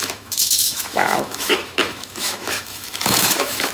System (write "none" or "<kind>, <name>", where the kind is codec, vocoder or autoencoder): autoencoder, DAC-VAE